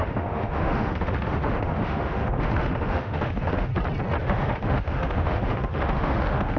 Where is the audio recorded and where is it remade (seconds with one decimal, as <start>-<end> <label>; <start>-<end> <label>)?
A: 0.0-3.7 remade; 3.7-4.2 recorded; 4.2-6.6 remade